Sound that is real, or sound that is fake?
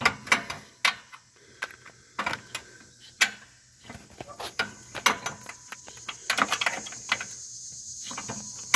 real